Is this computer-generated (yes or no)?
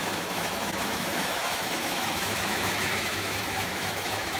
yes